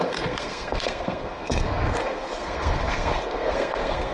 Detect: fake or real fake